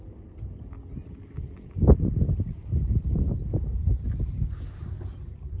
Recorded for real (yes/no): yes